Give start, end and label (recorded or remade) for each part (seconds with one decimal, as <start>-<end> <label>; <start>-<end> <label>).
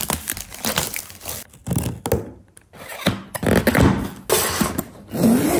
0.0-5.6 recorded